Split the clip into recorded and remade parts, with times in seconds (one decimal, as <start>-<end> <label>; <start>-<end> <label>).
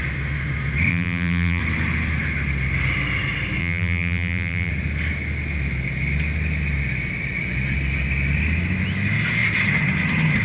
0.0-0.9 recorded; 0.9-1.6 remade; 1.6-3.6 recorded; 3.6-4.7 remade; 4.7-10.4 recorded